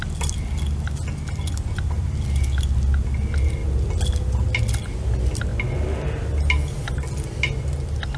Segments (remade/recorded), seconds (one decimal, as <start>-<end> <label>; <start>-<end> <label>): 0.0-8.2 recorded